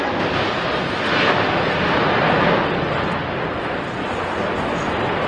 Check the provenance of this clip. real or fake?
real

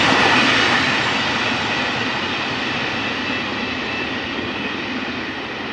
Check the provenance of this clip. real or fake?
real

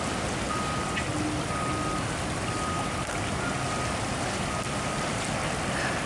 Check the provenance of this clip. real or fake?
real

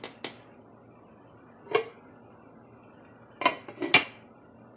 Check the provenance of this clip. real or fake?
real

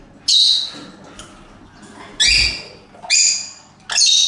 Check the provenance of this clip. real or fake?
real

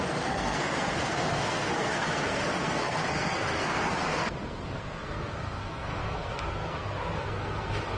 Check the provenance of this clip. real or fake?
fake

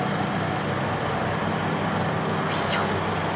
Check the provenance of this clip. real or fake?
real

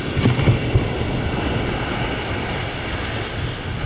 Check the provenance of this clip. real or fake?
real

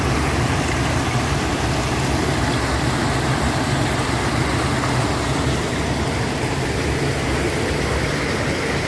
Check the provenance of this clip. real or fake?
real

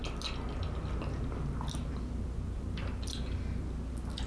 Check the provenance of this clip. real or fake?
real